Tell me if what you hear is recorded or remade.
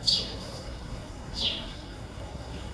remade